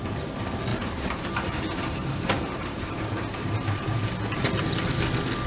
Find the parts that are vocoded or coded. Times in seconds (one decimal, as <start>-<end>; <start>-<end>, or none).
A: 0.7-4.0